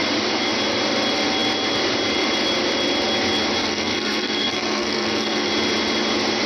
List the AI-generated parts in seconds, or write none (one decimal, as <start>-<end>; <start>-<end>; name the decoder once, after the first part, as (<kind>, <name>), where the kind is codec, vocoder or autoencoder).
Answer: 3.6-5.5 (codec, SNAC)